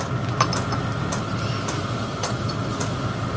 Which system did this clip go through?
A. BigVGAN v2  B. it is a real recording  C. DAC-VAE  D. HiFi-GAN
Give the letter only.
B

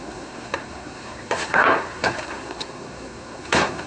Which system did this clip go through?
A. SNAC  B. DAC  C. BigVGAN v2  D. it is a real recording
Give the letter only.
A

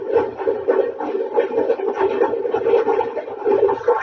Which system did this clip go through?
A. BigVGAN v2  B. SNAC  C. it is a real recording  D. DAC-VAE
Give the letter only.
C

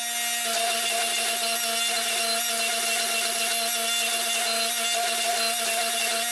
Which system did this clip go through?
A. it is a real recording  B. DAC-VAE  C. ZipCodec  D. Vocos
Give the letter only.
A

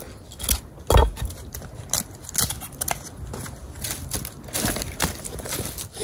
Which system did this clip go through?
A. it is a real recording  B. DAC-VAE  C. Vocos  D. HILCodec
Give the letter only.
A